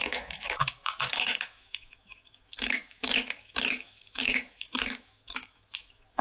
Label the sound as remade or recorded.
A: remade